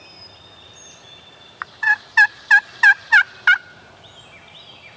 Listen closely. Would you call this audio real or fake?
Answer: real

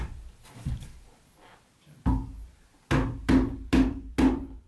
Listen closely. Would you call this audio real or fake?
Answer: real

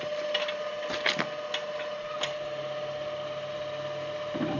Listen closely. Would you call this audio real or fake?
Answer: real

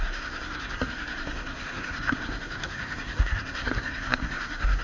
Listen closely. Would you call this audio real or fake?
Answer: fake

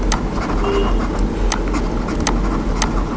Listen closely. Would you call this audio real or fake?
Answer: real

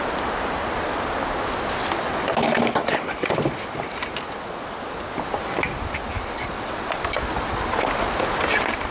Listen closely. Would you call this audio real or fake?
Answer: real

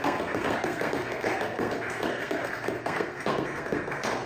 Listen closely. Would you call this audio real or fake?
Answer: fake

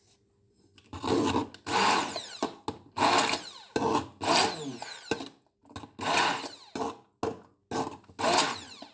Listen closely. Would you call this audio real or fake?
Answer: real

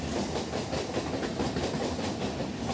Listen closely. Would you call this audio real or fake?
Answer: real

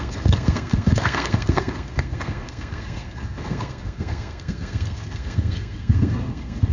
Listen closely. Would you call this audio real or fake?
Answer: fake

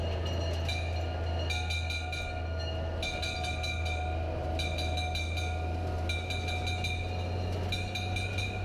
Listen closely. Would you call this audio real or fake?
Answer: real